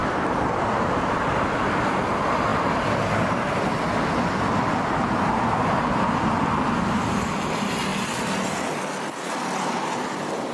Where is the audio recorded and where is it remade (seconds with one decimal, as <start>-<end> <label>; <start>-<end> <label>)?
0.0-1.2 remade; 1.2-10.5 recorded